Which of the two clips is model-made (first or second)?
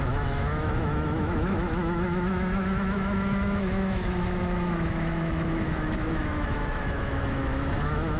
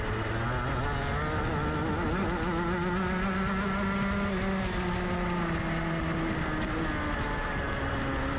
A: first